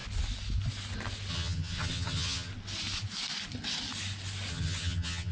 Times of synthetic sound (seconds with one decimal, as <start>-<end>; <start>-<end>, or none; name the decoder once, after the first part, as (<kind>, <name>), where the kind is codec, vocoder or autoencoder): 1.3-2.5 (vocoder, HiFi-GAN); 4.5-5.3